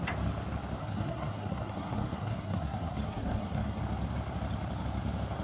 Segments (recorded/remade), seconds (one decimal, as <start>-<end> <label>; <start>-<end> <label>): 0.0-0.8 recorded; 0.8-3.8 remade; 3.8-5.4 recorded